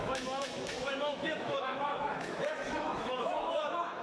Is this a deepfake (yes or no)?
yes